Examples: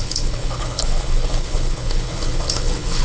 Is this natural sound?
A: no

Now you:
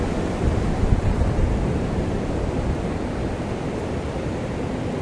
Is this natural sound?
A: yes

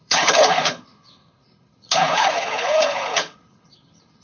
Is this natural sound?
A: no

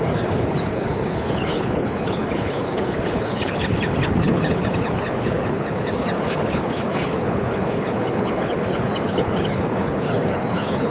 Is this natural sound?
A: no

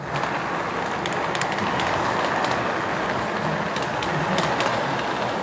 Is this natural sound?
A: yes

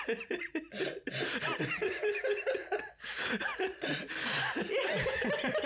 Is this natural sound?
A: yes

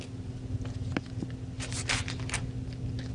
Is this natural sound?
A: yes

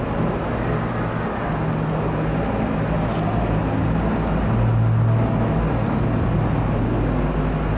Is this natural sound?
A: yes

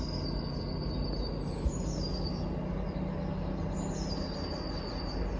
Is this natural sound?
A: yes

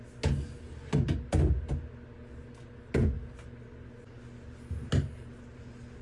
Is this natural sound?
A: yes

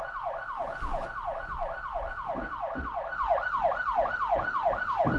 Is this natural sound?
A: yes